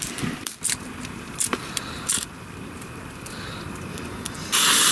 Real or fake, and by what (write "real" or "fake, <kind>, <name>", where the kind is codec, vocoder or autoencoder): fake, vocoder, BigVGAN v2